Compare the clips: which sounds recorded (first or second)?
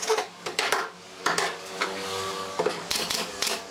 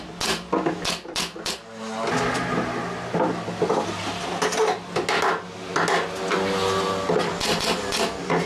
second